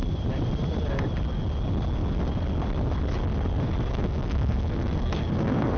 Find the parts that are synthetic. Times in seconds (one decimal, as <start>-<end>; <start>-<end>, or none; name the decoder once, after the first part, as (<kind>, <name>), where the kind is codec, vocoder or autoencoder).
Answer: 3.9-5.8 (codec, SNAC)